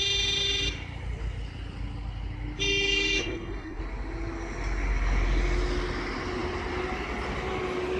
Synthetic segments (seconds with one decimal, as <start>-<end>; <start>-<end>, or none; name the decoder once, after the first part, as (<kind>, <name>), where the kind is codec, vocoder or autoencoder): 3.2-3.8 (codec, SNAC)